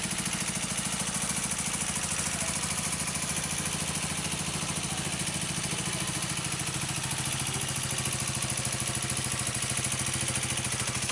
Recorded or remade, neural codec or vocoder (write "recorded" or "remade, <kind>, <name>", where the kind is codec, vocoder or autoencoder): recorded